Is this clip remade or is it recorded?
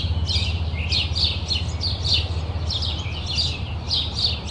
recorded